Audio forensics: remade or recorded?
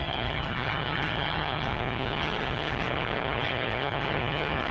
remade